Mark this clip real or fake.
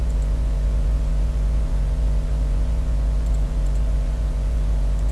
fake